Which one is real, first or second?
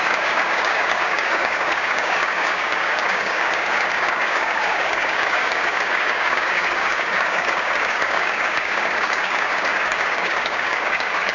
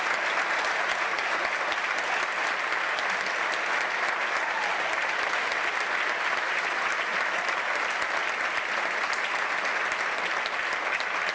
second